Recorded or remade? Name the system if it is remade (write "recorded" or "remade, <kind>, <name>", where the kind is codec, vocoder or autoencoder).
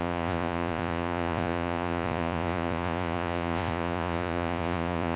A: remade, vocoder, Vocos